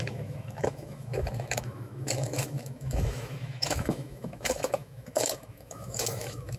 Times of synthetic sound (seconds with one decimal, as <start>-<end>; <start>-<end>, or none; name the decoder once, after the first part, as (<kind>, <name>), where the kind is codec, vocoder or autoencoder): 0.0-6.6 (autoencoder, DAC-VAE)